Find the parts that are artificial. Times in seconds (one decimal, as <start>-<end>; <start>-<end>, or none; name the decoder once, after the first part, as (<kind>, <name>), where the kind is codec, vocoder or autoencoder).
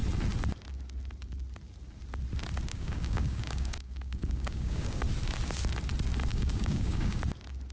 2.7-5.0 (codec, DAC); 6.3-7.2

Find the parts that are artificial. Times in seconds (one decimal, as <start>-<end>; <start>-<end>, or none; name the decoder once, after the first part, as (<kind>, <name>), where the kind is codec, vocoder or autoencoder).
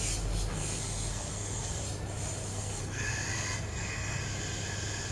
0.5-1.8 (codec, SNAC); 2.5-3.1; 3.7-4.2